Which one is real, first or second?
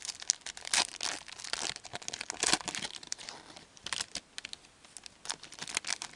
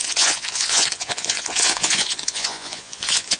first